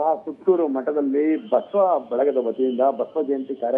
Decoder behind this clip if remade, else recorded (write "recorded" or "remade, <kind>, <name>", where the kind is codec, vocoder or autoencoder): remade, autoencoder, DAC-VAE